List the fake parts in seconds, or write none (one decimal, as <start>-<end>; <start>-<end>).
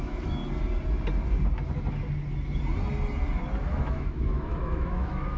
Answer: 0.0-0.4; 3.6-5.4